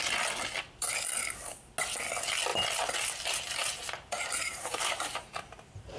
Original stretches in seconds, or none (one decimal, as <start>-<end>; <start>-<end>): 0.0-3.6

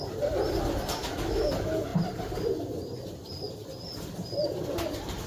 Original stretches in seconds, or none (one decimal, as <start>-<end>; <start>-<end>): 0.0-1.0; 1.5-5.3